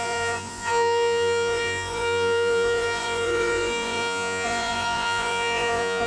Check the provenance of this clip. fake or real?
fake